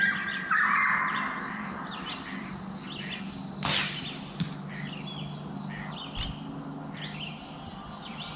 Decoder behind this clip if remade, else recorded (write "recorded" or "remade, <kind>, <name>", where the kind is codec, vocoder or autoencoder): recorded